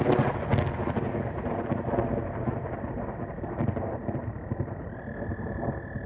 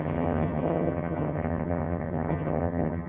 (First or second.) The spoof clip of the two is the second